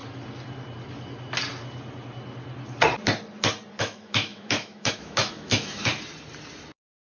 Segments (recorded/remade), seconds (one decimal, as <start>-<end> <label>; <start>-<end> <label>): 0.0-3.8 recorded; 3.8-5.9 remade; 5.9-7.1 recorded